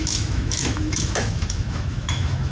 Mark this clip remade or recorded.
remade